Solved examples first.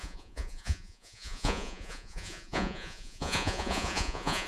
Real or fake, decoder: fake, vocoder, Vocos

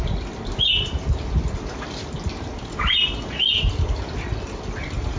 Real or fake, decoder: real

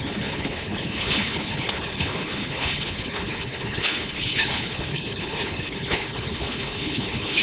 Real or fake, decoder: fake, codec, HILCodec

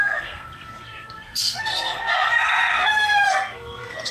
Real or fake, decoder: fake, codec, SNAC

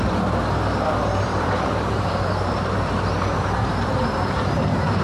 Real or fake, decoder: fake, vocoder, BigVGAN v2